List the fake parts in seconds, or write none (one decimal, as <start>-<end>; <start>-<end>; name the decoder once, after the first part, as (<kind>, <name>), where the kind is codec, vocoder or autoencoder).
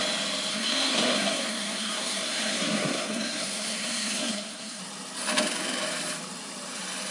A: 0.5-4.8 (codec, SNAC)